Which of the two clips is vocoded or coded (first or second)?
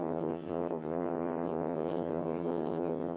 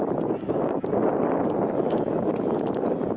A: first